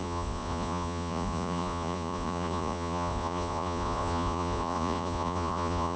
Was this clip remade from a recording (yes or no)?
yes